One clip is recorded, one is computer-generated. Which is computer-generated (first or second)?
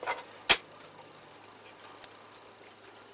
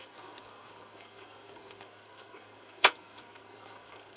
second